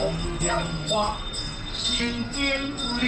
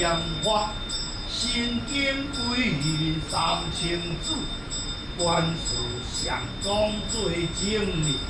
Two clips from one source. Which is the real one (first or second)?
second